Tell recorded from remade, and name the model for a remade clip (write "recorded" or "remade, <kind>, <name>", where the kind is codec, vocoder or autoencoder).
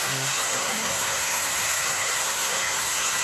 remade, codec, SNAC